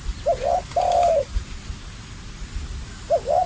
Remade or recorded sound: recorded